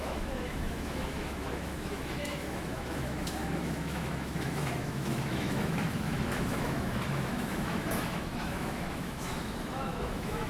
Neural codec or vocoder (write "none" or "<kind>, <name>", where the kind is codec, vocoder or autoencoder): autoencoder, DAC-VAE